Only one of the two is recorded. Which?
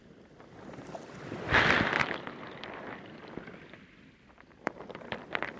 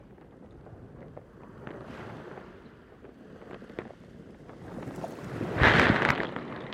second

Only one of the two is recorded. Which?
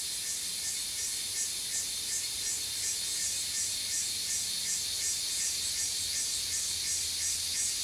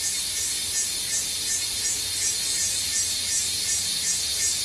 second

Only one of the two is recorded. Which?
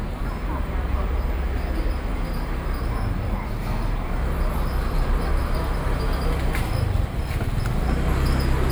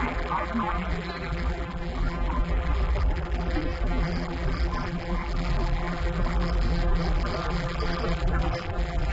first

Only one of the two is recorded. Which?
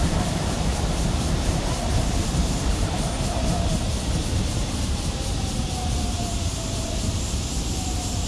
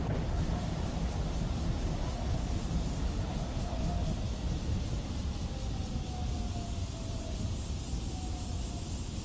second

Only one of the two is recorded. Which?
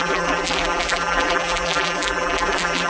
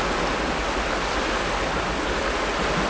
second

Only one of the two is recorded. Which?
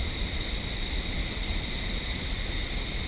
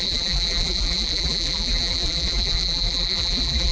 first